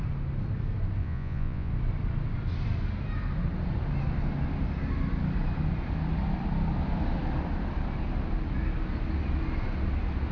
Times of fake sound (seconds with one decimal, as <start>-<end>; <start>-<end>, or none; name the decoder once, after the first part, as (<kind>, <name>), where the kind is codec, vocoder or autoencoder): 1.0-1.7 (vocoder, Vocos)